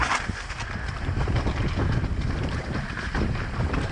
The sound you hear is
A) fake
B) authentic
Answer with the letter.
B